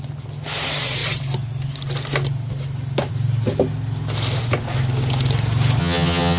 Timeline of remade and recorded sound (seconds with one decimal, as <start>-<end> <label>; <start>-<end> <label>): 0.0-5.8 recorded; 5.8-6.4 remade